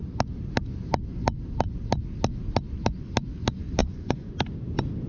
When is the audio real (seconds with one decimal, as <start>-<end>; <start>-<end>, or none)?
0.0-3.8; 4.3-5.1